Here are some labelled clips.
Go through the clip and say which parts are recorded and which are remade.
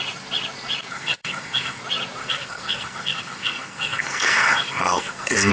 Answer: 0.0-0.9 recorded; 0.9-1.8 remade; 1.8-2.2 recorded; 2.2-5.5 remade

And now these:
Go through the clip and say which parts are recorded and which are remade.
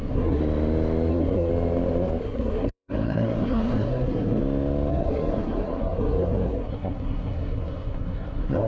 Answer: 0.0-0.4 remade; 0.4-1.1 recorded; 1.1-1.5 remade; 1.5-2.2 recorded; 2.2-4.4 remade; 4.4-4.9 recorded; 4.9-8.7 remade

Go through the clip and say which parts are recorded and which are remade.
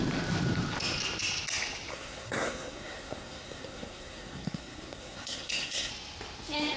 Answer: 0.0-1.9 recorded; 1.9-5.9 remade; 5.9-6.8 recorded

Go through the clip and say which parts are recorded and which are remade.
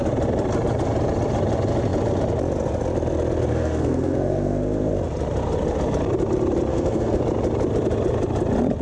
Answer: 0.0-3.5 recorded; 3.5-4.9 remade; 4.9-6.7 recorded; 6.7-7.2 remade; 7.2-8.8 recorded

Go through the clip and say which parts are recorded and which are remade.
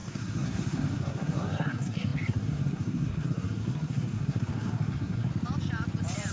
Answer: 0.0-5.3 remade; 5.3-6.3 recorded